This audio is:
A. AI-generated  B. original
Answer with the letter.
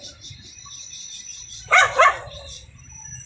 A